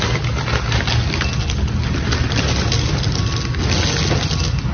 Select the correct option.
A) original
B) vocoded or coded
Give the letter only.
A